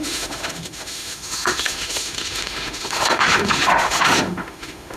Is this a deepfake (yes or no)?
yes